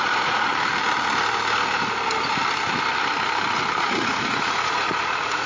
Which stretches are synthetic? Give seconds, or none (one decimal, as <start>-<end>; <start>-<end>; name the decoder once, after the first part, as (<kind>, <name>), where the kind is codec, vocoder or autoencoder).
0.0-0.5 (vocoder, Vocos); 3.8-5.5